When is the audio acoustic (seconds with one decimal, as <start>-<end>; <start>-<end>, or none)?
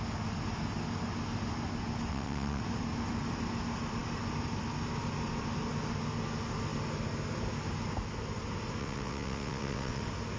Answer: 0.0-2.1; 2.6-8.8; 10.0-10.4